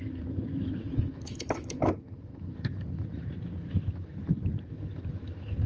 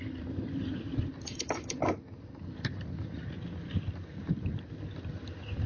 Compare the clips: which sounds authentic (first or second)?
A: second